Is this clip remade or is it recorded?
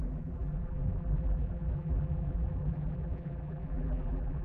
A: remade